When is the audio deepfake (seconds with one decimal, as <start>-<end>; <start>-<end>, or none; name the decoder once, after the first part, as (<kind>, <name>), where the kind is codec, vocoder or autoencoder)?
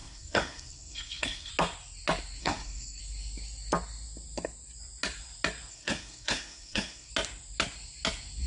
0.0-1.5 (codec, SNAC); 2.4-3.0; 5.7-7.1